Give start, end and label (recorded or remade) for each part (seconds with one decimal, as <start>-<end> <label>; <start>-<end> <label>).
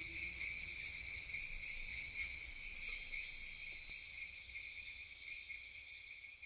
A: 0.0-1.4 remade; 1.4-1.9 recorded; 1.9-2.5 remade; 2.5-4.0 recorded; 4.0-6.5 remade